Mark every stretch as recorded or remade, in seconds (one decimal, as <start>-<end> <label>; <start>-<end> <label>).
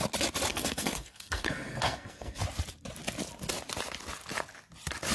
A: 0.0-0.5 recorded; 0.5-2.4 remade; 2.4-5.1 recorded